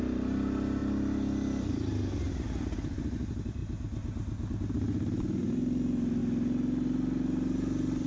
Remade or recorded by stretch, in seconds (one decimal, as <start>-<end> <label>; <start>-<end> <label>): 0.0-0.8 remade; 0.8-1.7 recorded; 1.7-3.6 remade; 3.6-4.7 recorded; 4.7-6.2 remade; 6.2-8.1 recorded